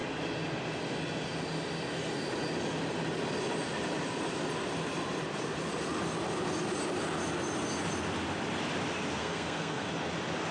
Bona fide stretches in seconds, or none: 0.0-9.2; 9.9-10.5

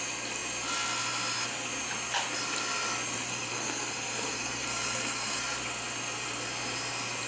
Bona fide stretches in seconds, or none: 0.0-3.3; 5.4-7.3

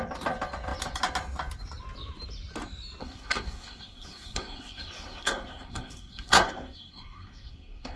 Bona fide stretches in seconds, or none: 0.0-3.0

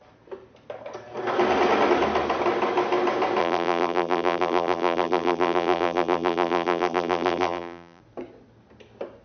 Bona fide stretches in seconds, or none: 0.0-3.4; 8.0-9.2

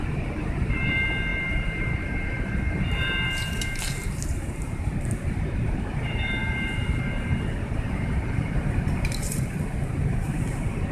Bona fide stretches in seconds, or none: none

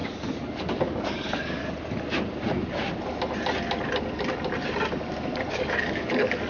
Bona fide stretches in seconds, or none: 1.6-5.5